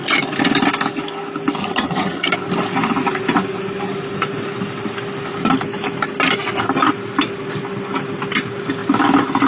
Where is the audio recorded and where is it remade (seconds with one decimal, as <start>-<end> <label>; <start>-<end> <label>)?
0.0-1.6 recorded; 1.6-2.3 remade; 2.3-9.5 recorded